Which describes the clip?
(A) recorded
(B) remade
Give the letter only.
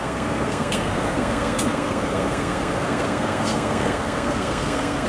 B